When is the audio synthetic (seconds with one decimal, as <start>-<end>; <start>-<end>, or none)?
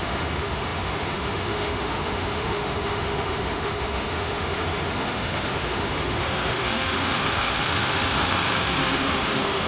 0.0-9.7